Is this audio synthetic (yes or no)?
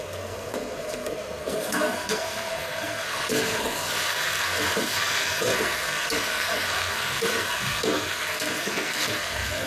yes